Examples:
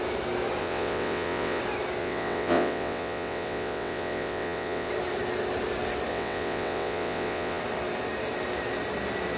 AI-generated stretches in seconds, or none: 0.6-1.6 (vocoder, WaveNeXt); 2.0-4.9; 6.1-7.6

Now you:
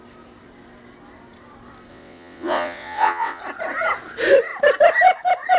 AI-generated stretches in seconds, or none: 1.9-3.4 (vocoder, WaveNeXt)

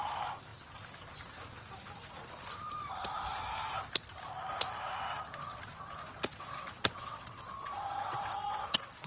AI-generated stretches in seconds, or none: 6.3-9.1 (vocoder, WaveNeXt)

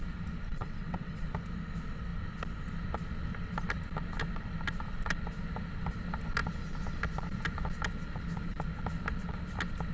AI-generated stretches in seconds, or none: 0.5-1.2 (vocoder, WaveNeXt)

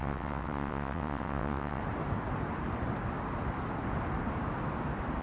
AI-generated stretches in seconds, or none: 0.0-1.8 (vocoder, WaveNeXt)